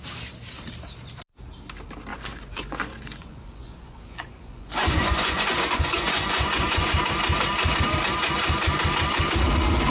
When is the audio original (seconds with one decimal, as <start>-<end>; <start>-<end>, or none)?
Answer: 0.0-2.1; 6.9-9.9